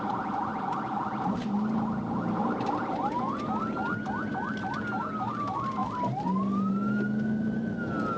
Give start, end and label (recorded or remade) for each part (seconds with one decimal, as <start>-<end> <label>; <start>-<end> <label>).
0.0-8.2 recorded